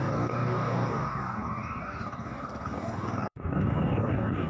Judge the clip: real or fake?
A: fake